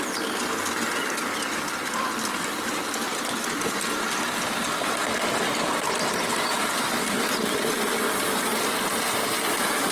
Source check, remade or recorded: recorded